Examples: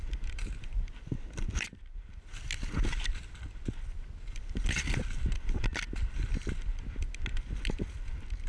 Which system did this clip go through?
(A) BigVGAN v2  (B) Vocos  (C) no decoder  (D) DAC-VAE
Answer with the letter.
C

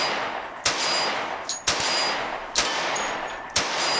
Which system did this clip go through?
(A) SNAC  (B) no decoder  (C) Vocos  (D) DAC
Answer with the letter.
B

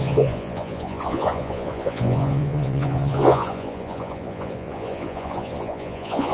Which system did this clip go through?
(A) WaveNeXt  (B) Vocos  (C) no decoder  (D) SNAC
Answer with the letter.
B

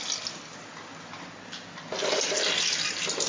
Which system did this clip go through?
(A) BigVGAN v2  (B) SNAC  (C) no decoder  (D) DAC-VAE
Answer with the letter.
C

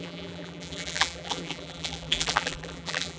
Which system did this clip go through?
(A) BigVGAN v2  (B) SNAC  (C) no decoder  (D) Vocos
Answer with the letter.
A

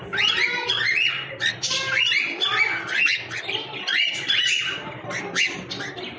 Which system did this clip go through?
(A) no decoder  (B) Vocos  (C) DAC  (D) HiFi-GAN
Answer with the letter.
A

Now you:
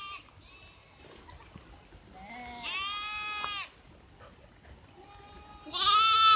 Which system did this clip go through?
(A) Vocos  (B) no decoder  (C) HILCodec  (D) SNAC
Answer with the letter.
B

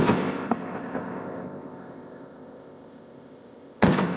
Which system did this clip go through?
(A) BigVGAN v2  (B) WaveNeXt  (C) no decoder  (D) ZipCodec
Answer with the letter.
D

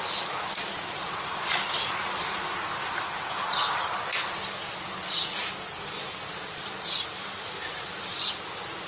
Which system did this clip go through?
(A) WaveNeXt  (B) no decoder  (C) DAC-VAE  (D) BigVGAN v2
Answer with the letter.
B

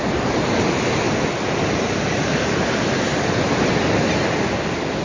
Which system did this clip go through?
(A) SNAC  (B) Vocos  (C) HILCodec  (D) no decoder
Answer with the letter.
D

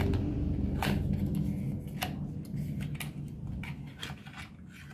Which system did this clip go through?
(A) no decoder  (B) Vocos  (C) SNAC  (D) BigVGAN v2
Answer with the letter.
A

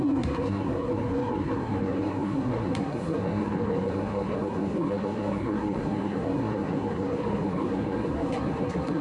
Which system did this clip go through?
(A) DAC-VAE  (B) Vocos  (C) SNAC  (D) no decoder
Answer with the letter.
C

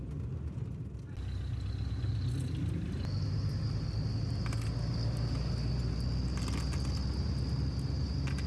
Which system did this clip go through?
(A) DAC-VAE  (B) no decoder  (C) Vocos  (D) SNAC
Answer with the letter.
B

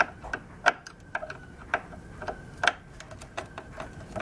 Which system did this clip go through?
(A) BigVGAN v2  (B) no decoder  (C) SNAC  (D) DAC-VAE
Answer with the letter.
B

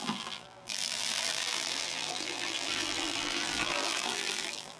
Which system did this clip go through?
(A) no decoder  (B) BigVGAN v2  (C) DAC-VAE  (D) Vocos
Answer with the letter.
B